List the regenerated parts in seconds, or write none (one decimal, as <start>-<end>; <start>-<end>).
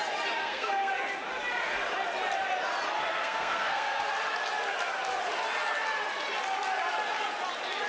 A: 0.4-0.9; 3.1-4.1